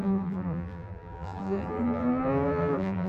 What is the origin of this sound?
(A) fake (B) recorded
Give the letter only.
A